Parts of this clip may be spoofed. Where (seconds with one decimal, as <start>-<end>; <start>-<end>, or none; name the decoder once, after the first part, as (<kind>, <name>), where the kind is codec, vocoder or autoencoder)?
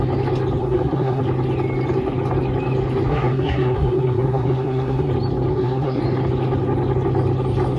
0.6-1.2 (codec, SNAC); 3.1-5.1; 5.5-6.0